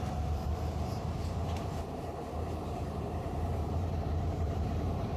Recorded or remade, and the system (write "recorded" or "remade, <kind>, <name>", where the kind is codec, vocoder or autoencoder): remade, vocoder, BigVGAN v2